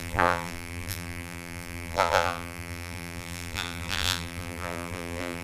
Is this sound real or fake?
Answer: fake